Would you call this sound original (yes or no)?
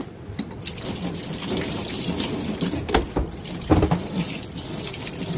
yes